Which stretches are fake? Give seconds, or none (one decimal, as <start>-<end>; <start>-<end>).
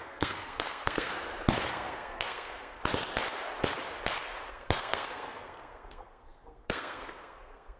0.0-1.1; 1.7-2.8; 4.5-7.8